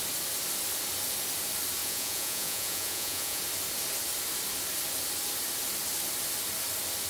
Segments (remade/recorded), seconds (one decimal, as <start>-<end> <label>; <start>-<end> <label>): 0.0-1.8 recorded; 1.8-3.4 remade; 3.4-7.1 recorded